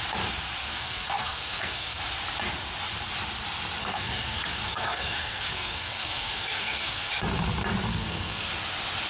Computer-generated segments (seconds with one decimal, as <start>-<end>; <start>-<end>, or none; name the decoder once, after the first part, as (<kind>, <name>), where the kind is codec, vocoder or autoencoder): 0.6-2.0 (codec, SNAC); 3.8-7.1; 7.9-8.5